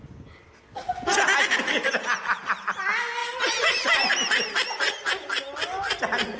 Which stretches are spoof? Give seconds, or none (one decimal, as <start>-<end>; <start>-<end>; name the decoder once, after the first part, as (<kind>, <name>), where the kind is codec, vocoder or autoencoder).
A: none